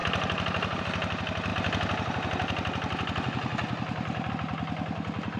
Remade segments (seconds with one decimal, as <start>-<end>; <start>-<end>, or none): none

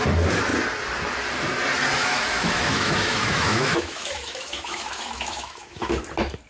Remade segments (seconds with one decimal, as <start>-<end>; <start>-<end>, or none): 2.0-5.9